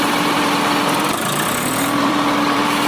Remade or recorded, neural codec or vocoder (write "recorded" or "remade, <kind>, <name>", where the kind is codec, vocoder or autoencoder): remade, vocoder, BigVGAN v2